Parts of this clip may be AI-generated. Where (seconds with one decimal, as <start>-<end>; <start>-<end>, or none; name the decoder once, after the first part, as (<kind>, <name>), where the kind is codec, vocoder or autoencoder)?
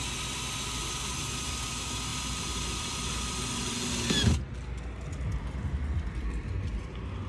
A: 2.1-3.9 (vocoder, BigVGAN v2)